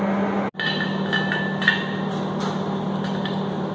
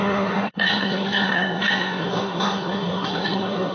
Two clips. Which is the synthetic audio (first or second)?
second